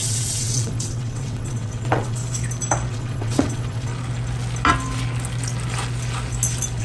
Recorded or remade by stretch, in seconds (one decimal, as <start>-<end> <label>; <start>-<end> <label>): 0.0-2.2 remade; 2.2-2.9 recorded; 2.9-3.9 remade; 3.9-6.8 recorded